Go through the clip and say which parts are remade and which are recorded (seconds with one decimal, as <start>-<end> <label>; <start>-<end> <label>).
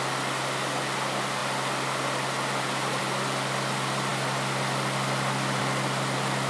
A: 0.0-6.5 recorded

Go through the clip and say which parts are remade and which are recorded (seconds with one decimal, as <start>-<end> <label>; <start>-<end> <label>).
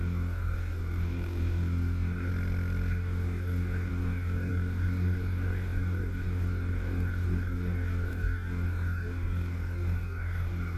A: 0.0-2.3 remade; 2.3-2.9 recorded; 2.9-10.8 remade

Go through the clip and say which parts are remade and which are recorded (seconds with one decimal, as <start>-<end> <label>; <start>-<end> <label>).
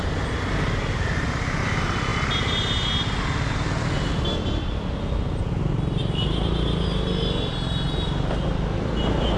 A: 0.0-9.4 recorded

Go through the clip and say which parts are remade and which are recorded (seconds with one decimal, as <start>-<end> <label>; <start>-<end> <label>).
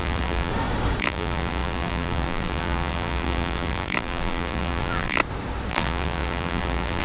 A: 0.0-0.5 remade; 0.5-1.0 recorded; 1.0-5.2 remade; 5.2-5.7 recorded; 5.7-7.0 remade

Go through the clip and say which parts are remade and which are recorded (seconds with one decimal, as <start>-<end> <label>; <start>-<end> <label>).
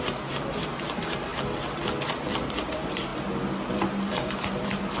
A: 0.0-1.3 remade; 1.3-2.1 recorded; 2.1-3.1 remade; 3.1-3.7 recorded; 3.7-5.0 remade